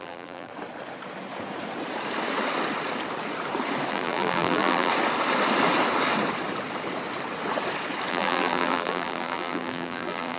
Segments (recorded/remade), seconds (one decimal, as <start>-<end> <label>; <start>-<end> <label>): 0.0-0.5 remade; 0.5-3.9 recorded; 3.9-4.9 remade; 4.9-8.1 recorded; 8.1-10.4 remade